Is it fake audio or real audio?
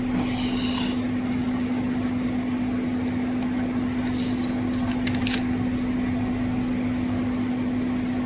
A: real